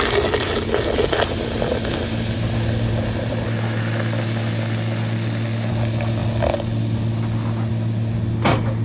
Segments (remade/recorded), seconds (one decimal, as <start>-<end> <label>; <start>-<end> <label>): 0.0-8.8 recorded